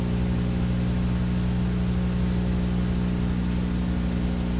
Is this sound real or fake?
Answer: real